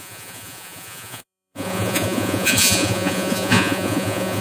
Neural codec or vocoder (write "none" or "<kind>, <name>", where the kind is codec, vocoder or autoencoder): vocoder, Vocos